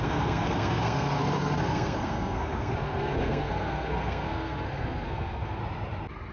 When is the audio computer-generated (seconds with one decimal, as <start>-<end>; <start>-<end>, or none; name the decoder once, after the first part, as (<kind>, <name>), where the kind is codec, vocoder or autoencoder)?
0.0-5.6 (codec, SNAC)

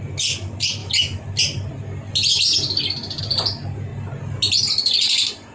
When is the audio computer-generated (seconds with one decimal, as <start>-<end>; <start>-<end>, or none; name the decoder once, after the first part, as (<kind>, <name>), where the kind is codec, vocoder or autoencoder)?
none

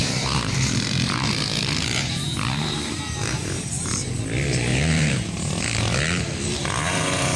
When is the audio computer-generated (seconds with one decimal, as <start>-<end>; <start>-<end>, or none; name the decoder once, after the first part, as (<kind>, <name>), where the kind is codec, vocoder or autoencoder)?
0.0-4.2 (vocoder, BigVGAN v2); 4.7-5.3

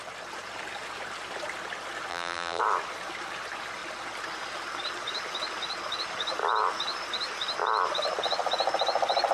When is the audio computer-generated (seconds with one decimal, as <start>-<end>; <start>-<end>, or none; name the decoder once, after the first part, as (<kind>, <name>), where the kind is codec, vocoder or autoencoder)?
2.1-2.6 (vocoder, BigVGAN v2)

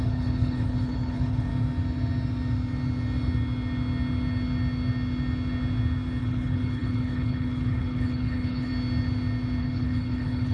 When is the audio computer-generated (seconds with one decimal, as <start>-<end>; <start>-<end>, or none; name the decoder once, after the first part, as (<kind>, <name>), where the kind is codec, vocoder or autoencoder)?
0.0-1.5 (codec, HILCodec); 6.2-8.7; 9.6-10.5

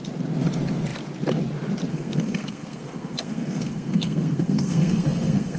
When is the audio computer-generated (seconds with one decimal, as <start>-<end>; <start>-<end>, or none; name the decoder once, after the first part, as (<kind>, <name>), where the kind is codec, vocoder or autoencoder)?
1.9-5.6 (codec, SNAC)